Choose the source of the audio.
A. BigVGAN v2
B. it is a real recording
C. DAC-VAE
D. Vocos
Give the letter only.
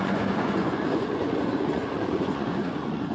D